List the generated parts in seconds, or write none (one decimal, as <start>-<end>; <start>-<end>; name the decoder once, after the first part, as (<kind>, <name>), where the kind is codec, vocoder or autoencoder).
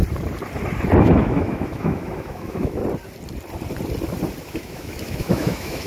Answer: 1.0-2.8 (autoencoder, DAC-VAE); 4.4-5.9